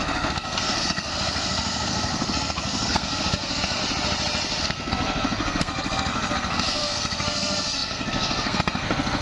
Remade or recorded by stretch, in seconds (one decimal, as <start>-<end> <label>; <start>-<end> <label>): 0.0-3.8 remade; 3.8-4.6 recorded; 4.6-9.2 remade